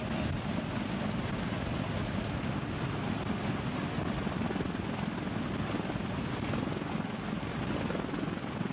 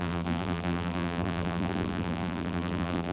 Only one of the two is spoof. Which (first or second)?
second